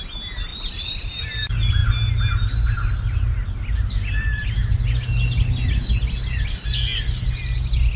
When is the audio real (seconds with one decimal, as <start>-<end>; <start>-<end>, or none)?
0.0-8.0